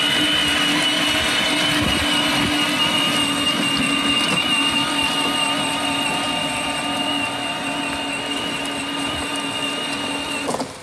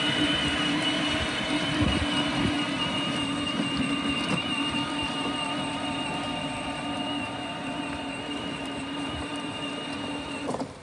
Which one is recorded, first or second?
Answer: first